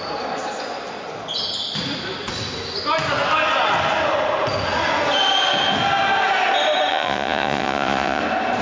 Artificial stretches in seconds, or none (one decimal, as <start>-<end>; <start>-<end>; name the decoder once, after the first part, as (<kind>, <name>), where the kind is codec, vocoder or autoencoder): 6.9-8.2 (vocoder, Vocos)